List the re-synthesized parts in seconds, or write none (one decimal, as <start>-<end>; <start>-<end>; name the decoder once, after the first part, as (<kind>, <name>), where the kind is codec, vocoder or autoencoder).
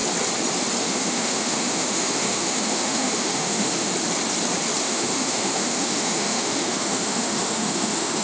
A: 0.8-3.9 (autoencoder, DAC-VAE); 4.8-8.2